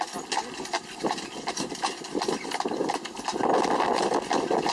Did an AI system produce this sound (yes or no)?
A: no